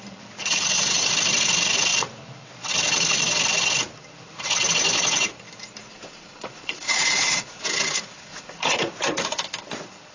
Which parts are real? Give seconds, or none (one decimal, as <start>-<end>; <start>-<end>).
0.0-0.4; 1.1-5.8; 7.6-8.3; 8.9-10.1